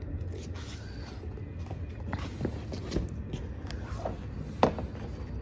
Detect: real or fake real